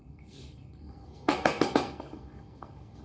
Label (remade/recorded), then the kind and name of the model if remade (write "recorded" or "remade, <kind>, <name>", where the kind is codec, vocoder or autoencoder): remade, codec, SNAC